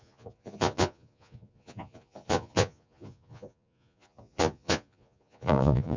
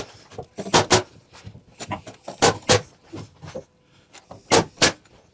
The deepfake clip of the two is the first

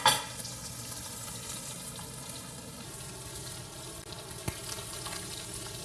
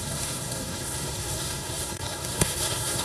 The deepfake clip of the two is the second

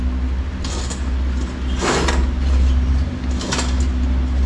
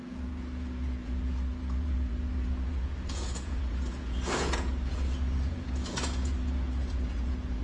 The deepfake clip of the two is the second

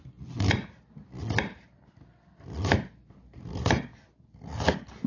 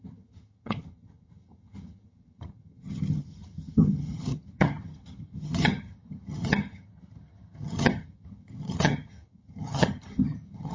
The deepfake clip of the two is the second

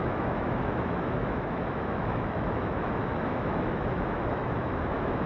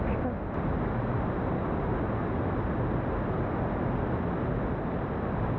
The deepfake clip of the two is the first